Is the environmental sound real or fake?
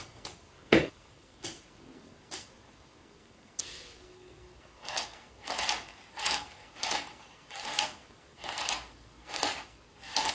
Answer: fake